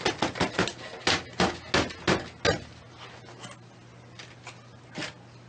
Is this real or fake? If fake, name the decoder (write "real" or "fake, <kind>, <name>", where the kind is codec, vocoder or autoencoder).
real